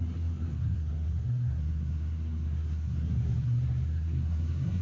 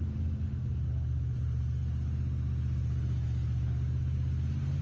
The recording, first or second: second